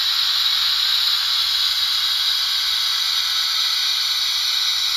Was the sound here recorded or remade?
recorded